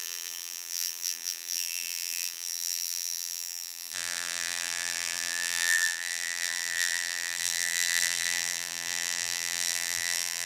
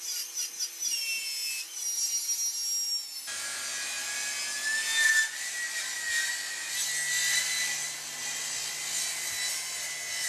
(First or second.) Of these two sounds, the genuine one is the second